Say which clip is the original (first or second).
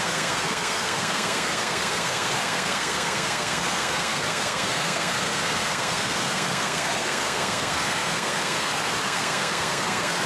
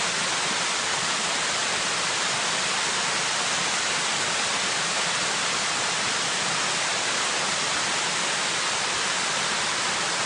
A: second